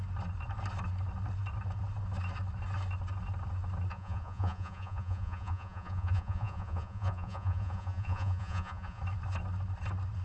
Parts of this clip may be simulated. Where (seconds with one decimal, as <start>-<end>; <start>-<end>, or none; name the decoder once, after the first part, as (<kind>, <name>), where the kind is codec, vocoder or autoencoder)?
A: 3.9-9.0 (vocoder, Vocos)

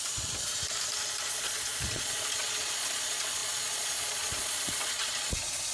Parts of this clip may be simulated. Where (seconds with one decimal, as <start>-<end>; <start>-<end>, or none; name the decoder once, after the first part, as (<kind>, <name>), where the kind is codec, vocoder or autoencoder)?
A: 0.0-0.5 (vocoder, Vocos); 1.3-5.7

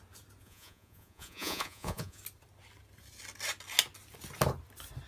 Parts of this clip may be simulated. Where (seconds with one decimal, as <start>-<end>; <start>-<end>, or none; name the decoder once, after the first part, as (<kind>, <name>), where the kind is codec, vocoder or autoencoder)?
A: 0.4-2.2 (vocoder, Vocos)

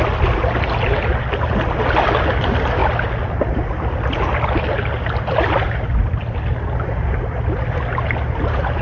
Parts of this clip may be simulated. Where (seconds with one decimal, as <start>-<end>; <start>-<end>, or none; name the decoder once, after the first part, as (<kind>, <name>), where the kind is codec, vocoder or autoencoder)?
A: none

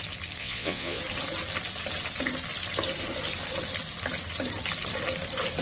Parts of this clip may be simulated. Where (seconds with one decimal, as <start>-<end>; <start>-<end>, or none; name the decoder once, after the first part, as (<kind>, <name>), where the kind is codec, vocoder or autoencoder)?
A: 0.4-1.0 (vocoder, Vocos)

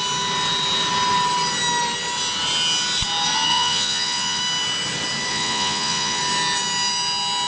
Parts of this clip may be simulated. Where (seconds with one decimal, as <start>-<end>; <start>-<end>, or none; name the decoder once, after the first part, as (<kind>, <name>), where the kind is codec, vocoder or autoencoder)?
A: 3.5-4.4 (vocoder, Vocos); 5.3-6.2